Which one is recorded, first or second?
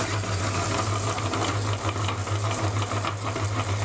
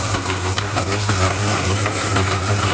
first